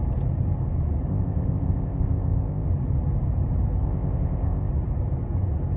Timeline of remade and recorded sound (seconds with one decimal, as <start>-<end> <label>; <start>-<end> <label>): 0.0-1.1 recorded; 1.1-2.7 remade; 2.7-3.8 recorded; 3.8-4.7 remade; 4.7-5.8 recorded